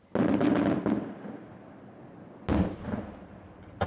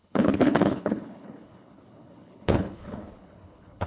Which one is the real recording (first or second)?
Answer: first